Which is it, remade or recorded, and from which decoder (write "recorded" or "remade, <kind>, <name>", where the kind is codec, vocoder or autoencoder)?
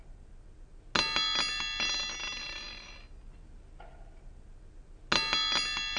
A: recorded